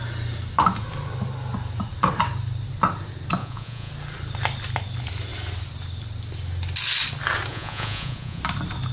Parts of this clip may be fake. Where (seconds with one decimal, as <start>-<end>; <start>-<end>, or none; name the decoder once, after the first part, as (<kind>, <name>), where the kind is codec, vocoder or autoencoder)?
3.4-3.9 (vocoder, Vocos); 7.5-8.4